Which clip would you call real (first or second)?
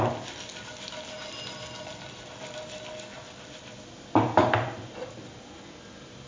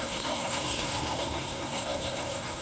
first